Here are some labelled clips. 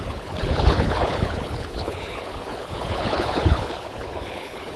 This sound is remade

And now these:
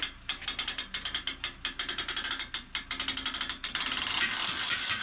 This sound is recorded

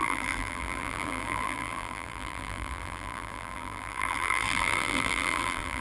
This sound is remade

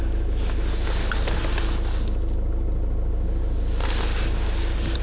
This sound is recorded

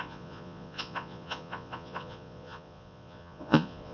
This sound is remade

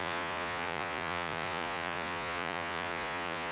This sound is remade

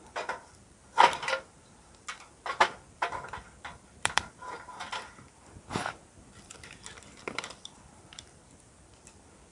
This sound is remade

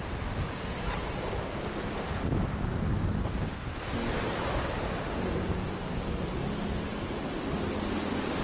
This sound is recorded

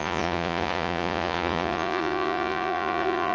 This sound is remade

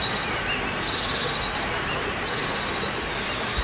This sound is recorded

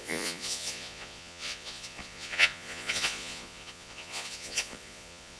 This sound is remade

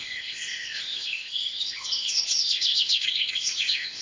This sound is remade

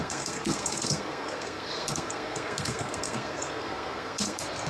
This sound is remade